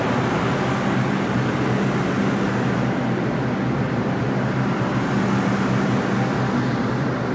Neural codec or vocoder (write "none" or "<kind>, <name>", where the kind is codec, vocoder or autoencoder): none